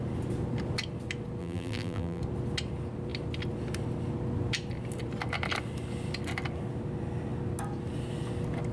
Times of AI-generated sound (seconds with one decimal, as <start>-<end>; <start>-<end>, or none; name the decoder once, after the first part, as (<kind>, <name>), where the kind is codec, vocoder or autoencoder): 1.4-2.2 (vocoder, BigVGAN v2)